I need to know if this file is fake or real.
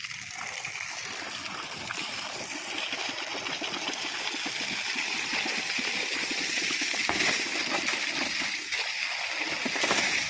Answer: real